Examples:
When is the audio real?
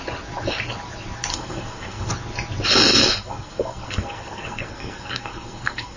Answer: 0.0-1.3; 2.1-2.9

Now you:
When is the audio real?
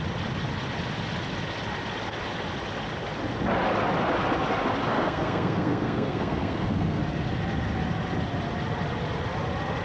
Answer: 0.0-4.9; 7.0-9.8